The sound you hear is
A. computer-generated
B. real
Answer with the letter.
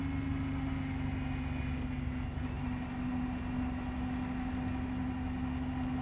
B